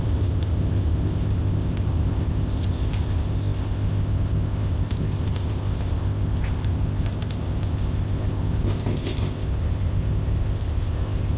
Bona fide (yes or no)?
no